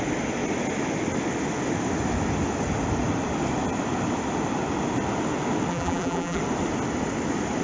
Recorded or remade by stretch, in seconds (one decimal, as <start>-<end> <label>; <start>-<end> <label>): 0.0-5.7 recorded; 5.7-6.4 remade; 6.4-7.6 recorded

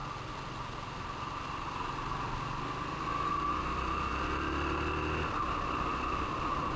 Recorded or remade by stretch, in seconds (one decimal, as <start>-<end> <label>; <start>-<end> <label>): 0.0-6.8 recorded